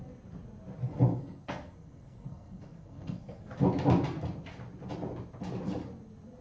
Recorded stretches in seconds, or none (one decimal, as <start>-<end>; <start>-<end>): 0.0-0.8; 3.5-6.4

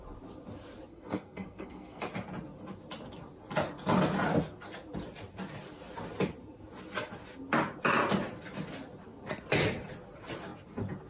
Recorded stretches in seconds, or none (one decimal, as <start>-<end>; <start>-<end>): 0.0-0.9; 2.0-11.1

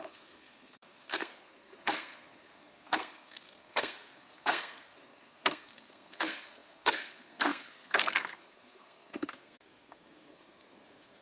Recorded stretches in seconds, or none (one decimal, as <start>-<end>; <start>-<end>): none

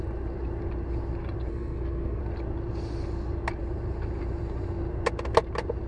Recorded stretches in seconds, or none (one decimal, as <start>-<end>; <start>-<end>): 0.0-1.5; 2.2-5.9